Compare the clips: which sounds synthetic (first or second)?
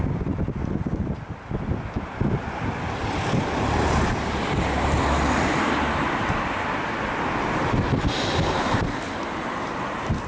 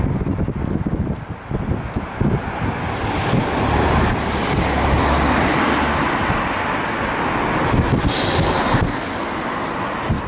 first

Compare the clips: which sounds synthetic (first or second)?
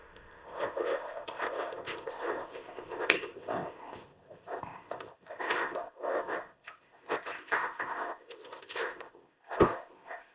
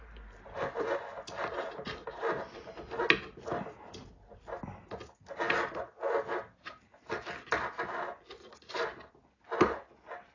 first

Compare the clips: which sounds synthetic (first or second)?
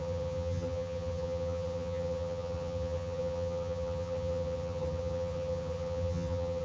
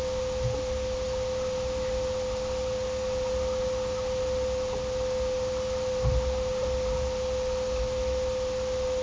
first